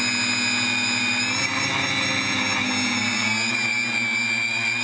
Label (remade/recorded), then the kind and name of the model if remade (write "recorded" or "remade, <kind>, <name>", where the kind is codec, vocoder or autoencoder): recorded